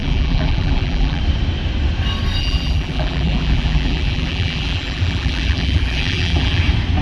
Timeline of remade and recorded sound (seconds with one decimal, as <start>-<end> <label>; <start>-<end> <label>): 0.0-1.2 remade; 1.2-2.4 recorded; 2.4-6.6 remade; 6.6-7.0 recorded